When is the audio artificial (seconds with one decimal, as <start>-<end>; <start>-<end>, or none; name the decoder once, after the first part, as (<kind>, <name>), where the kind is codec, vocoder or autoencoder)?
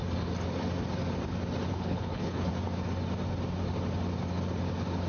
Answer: 1.7-2.5 (codec, HILCodec)